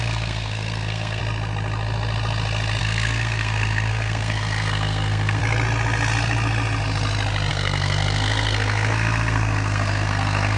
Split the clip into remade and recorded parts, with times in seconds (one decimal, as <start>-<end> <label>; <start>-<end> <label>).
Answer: 0.0-1.2 remade; 1.2-2.8 recorded; 2.8-5.4 remade; 5.4-7.5 recorded; 7.5-10.6 remade